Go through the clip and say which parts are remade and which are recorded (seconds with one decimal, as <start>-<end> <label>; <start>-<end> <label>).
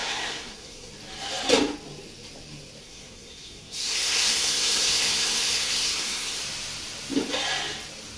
0.0-0.9 remade; 0.9-2.8 recorded; 2.8-6.4 remade; 6.4-8.2 recorded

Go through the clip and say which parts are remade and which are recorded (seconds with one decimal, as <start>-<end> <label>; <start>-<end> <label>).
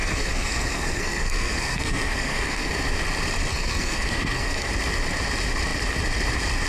0.0-2.7 remade; 2.7-3.5 recorded; 3.5-4.7 remade; 4.7-6.7 recorded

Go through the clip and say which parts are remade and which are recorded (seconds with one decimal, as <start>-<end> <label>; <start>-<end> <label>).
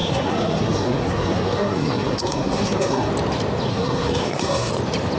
0.0-3.1 remade; 3.1-3.7 recorded; 3.7-4.7 remade; 4.7-5.2 recorded